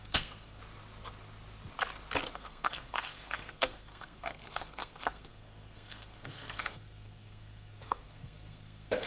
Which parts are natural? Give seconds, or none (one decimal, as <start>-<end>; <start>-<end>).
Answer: 0.6-2.3